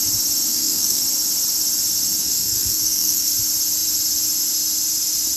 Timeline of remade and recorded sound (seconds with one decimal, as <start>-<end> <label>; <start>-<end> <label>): 0.0-0.5 recorded; 0.5-1.0 remade; 1.0-2.2 recorded; 2.2-3.3 remade; 3.3-5.4 recorded